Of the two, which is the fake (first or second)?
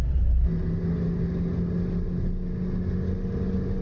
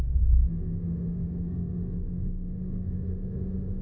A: second